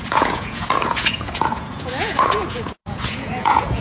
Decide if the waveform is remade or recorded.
remade